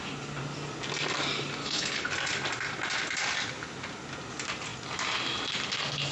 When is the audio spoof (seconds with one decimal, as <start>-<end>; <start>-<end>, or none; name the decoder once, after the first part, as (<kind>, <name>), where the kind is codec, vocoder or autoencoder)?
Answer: 1.6-2.1 (codec, HILCodec)